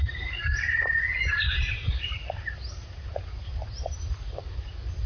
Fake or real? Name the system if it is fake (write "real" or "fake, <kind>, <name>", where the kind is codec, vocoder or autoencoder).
fake, vocoder, BigVGAN v2